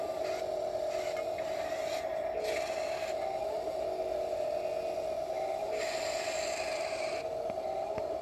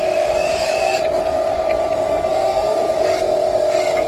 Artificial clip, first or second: second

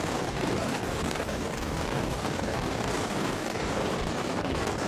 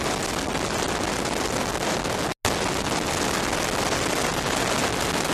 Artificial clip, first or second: first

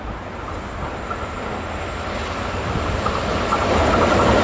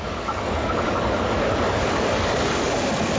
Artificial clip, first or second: second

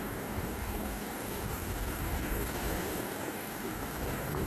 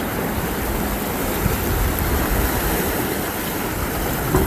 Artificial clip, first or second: first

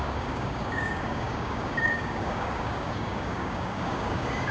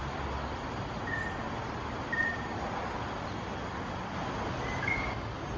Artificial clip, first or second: first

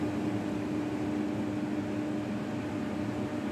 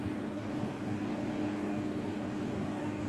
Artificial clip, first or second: second